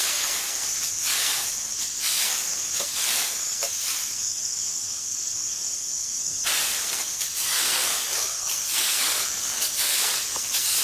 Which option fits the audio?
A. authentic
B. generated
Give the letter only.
B